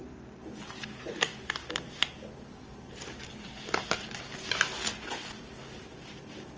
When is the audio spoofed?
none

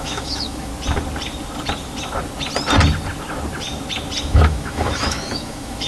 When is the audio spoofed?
0.0-0.7 (autoencoder, DAC-VAE); 4.2-5.9

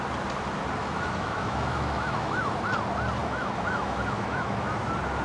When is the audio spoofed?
0.8-2.4 (autoencoder, DAC-VAE); 3.2-4.8